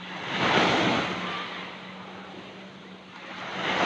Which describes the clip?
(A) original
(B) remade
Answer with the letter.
A